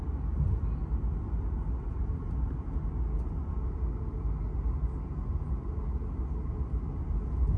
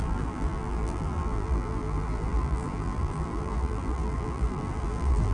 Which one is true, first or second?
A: first